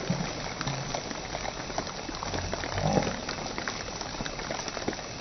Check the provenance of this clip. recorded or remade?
recorded